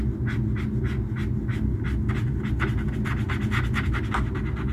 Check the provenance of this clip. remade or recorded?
recorded